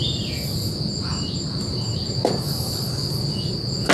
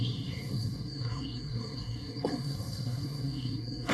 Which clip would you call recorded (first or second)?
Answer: first